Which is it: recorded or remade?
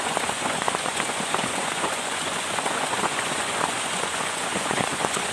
remade